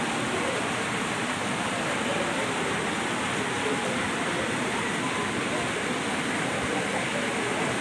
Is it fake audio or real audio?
real